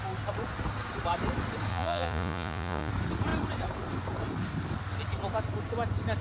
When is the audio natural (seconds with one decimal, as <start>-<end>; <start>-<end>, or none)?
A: 0.0-1.7; 2.9-6.2